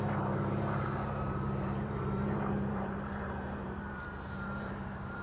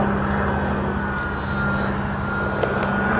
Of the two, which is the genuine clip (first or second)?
second